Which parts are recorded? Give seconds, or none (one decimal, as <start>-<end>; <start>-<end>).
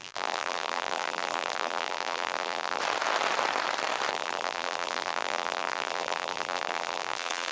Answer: 2.8-4.1